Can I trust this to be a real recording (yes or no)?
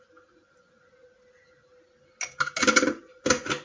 yes